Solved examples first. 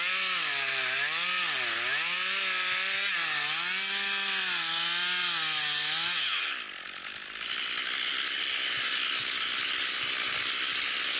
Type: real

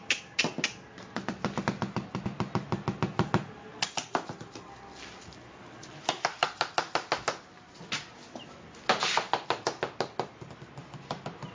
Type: real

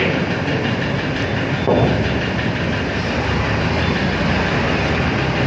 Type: real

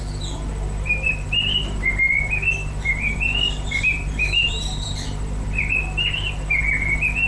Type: fake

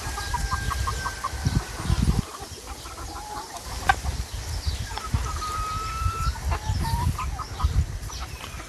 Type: real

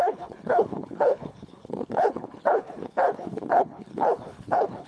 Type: fake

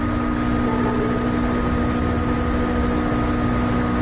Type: real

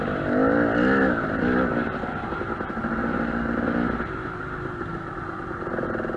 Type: real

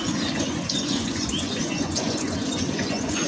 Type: fake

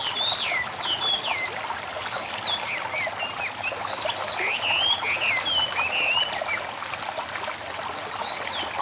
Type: real